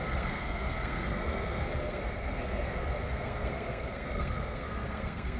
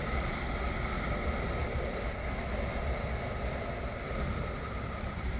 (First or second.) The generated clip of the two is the first